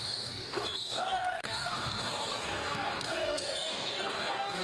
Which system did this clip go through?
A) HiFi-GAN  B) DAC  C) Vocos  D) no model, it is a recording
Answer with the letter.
B